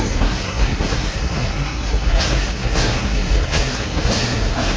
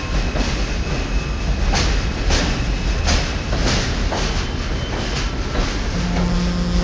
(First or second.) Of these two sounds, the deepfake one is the first